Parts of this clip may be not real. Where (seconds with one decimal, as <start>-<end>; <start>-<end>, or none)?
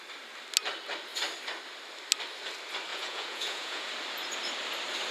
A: 2.9-3.9